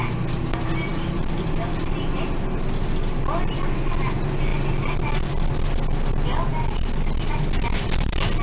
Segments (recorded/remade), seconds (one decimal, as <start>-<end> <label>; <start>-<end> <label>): 0.0-8.4 recorded